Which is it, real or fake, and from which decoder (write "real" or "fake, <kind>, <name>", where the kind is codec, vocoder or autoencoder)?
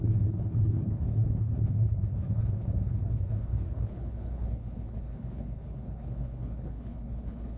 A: fake, codec, HILCodec